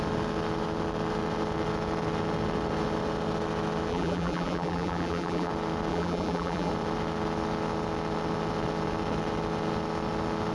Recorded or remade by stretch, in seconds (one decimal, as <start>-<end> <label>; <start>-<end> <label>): 0.0-3.9 recorded; 3.9-5.5 remade; 5.5-5.9 recorded; 5.9-6.7 remade; 6.7-10.5 recorded